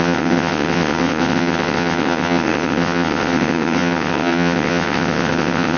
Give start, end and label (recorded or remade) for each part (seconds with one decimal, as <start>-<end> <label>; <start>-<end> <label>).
0.0-5.8 remade